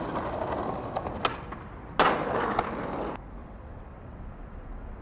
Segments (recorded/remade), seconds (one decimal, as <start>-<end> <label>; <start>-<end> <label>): 0.0-3.4 recorded; 3.4-5.0 remade